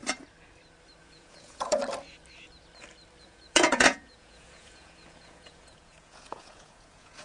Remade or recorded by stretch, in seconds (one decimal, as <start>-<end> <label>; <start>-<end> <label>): 0.0-1.0 recorded; 1.0-1.8 remade; 1.8-3.2 recorded; 3.2-7.2 remade